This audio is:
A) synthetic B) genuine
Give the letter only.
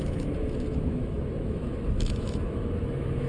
A